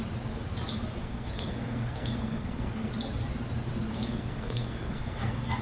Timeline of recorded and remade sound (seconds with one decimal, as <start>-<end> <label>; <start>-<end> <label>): 0.0-1.0 recorded; 1.0-2.9 remade; 2.9-3.9 recorded; 3.9-5.6 remade